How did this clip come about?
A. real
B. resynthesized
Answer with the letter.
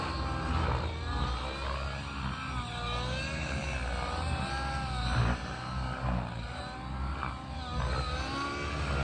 A